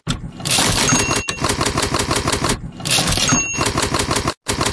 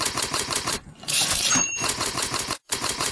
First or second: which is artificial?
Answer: second